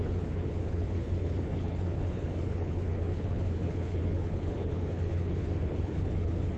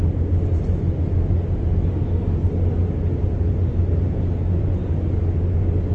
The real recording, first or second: second